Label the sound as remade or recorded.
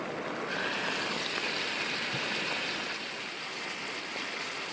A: recorded